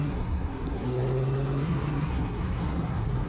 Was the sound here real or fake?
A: fake